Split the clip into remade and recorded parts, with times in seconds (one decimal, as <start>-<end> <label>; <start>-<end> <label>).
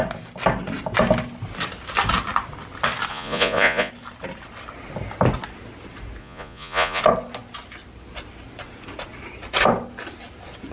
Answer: 0.0-3.1 recorded; 3.1-3.9 remade; 3.9-6.2 recorded; 6.2-7.0 remade; 7.0-10.7 recorded